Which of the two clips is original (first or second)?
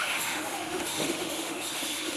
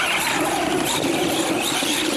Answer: second